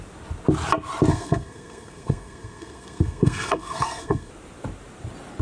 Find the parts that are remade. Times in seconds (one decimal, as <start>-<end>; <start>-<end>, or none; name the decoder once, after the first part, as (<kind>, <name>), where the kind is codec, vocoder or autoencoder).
1.1-4.3 (codec, SNAC)